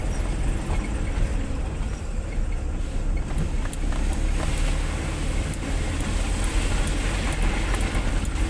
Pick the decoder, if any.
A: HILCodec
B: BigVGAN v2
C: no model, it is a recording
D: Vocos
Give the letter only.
C